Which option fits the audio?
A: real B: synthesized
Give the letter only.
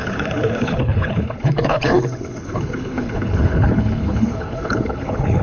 B